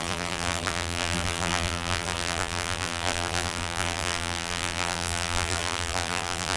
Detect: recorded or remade remade